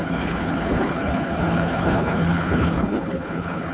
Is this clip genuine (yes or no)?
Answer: no